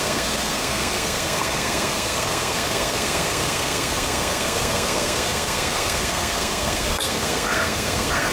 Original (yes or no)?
no